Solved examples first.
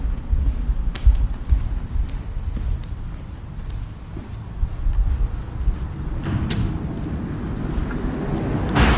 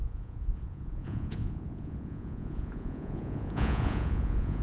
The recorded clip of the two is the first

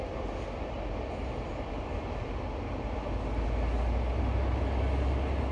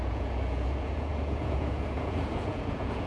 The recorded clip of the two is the first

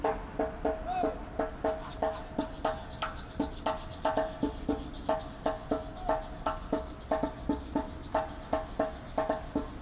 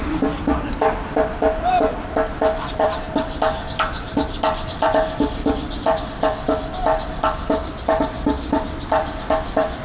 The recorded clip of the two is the first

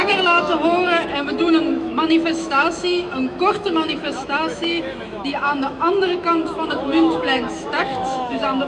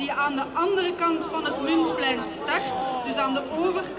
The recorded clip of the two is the second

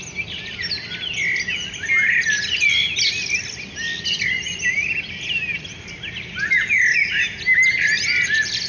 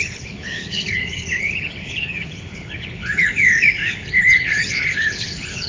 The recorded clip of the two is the first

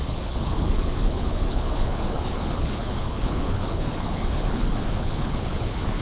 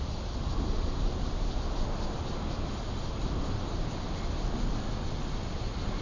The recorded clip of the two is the second